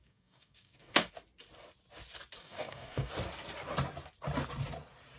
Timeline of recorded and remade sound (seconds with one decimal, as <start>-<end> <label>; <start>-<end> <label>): 0.0-1.1 remade; 1.1-2.4 recorded; 2.4-3.1 remade; 3.1-5.2 recorded